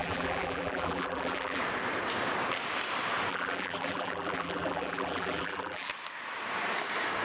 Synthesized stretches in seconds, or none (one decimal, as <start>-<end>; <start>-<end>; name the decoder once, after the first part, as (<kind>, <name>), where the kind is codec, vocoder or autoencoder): 0.0-1.6 (vocoder, BigVGAN v2); 3.3-5.9